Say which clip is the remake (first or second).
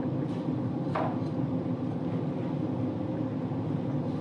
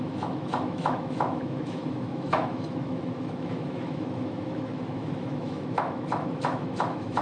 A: second